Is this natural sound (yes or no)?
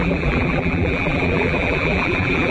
no